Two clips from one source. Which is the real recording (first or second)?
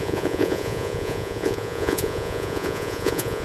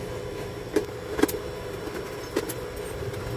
second